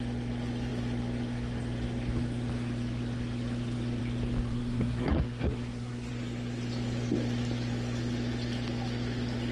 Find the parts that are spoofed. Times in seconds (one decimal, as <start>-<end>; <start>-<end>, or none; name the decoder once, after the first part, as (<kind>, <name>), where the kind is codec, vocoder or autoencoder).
4.5-6.1 (codec, SNAC)